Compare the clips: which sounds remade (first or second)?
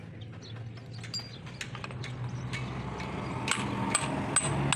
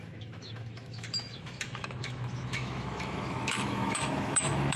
second